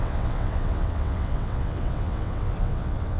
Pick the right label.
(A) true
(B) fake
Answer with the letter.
B